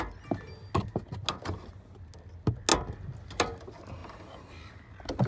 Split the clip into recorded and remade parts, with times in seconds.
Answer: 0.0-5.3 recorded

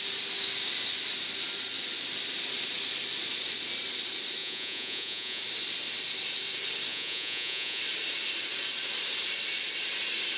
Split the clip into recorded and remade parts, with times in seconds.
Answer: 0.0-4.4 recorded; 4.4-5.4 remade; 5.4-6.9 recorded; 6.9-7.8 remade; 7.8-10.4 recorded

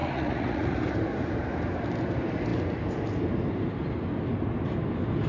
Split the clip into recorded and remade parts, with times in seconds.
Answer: 0.0-0.8 remade; 0.8-5.3 recorded